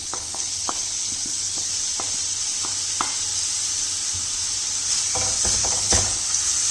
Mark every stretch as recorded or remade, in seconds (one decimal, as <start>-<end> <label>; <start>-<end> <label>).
0.0-1.7 remade; 1.7-5.6 recorded; 5.6-6.3 remade; 6.3-6.7 recorded